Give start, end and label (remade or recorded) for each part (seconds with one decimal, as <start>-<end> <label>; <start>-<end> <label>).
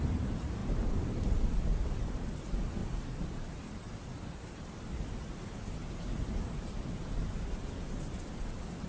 0.0-0.6 recorded; 0.6-2.2 remade; 2.2-2.8 recorded; 2.8-4.9 remade; 4.9-5.8 recorded; 5.8-6.8 remade; 6.8-8.9 recorded